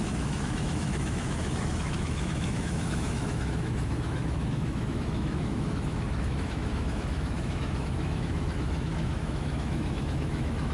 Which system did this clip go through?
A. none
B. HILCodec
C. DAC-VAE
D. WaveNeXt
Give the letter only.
C